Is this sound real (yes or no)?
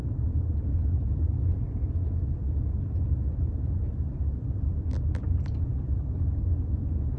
yes